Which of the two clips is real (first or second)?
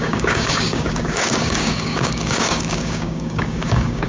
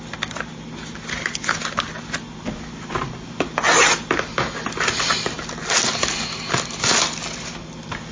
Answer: second